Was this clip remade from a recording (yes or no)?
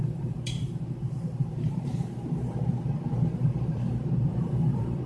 yes